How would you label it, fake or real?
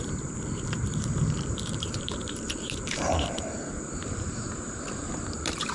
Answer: fake